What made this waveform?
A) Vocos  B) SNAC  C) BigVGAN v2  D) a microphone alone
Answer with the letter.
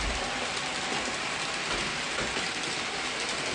D